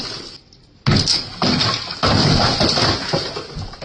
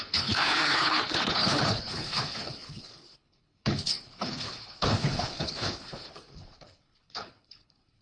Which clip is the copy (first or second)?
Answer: second